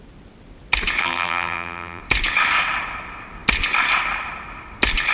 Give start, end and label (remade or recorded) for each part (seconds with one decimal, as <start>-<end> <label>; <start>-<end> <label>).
0.0-1.0 recorded; 1.0-2.0 remade; 2.0-5.1 recorded